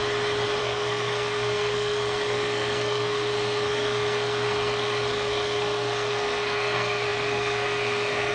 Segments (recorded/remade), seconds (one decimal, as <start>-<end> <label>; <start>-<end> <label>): 0.0-0.6 recorded; 0.6-8.3 remade